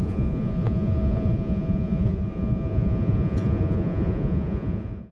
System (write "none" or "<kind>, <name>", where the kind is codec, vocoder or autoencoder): vocoder, Vocos